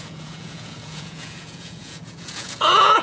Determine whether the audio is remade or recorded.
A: remade